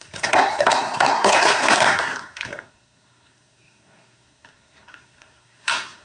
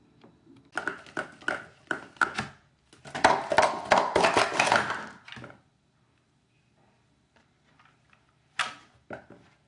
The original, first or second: second